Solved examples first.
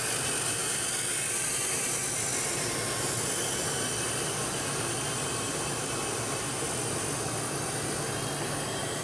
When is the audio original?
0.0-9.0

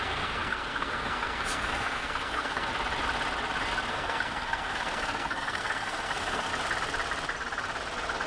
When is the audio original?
2.7-3.9; 6.5-8.3

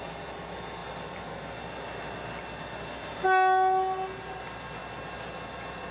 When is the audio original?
0.0-5.9

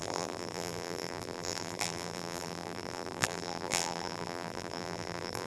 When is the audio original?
none

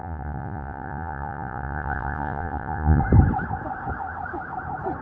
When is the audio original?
3.0-5.0